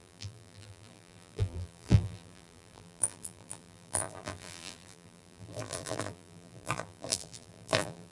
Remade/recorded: remade